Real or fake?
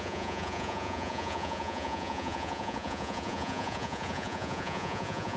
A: fake